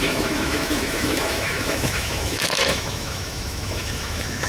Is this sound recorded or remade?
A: remade